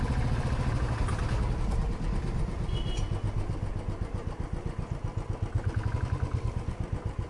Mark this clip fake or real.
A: real